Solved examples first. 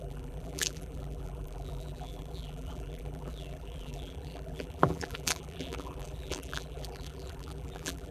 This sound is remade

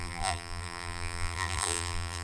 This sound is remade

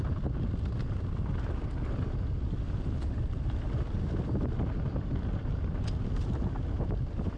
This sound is recorded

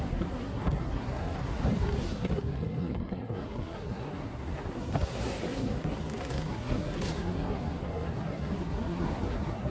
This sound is remade